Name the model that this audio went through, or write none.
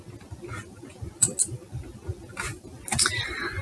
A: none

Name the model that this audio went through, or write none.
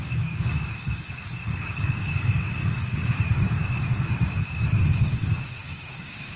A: codec, DAC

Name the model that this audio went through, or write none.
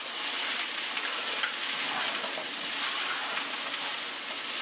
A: none